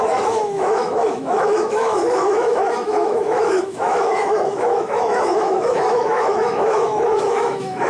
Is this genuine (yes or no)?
no